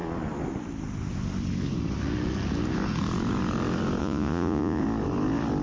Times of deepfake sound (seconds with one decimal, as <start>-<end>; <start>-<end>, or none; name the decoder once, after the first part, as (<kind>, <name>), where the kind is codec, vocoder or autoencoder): 4.0-4.8 (vocoder, Vocos)